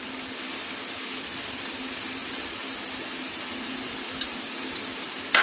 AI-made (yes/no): no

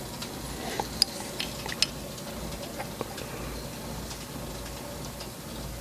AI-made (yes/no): no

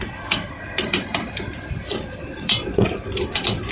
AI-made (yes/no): yes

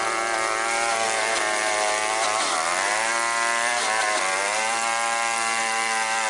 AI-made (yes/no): yes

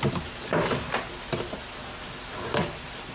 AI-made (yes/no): no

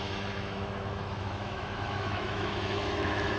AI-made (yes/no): yes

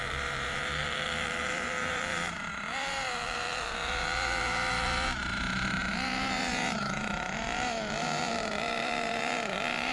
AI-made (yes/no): yes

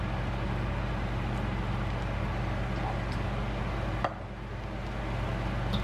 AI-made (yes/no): no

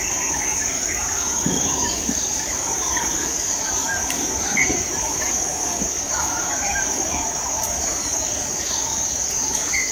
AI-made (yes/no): yes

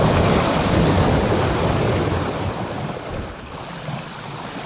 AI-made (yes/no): no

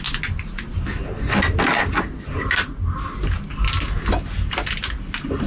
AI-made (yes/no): no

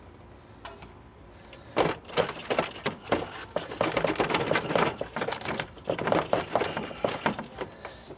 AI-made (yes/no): no